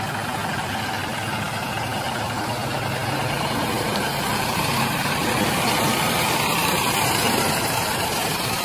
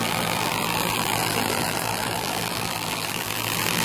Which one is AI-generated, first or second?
second